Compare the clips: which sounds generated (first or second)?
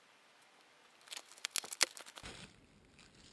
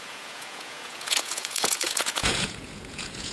second